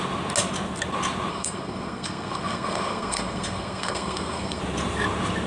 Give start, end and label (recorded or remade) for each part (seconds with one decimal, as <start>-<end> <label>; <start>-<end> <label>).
0.0-1.3 recorded; 1.3-4.6 remade; 4.6-5.5 recorded